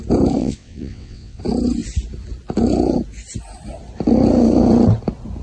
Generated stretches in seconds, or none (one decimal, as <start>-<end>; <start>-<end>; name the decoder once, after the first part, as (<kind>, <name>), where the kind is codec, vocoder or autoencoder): 0.4-1.4 (vocoder, WaveNeXt)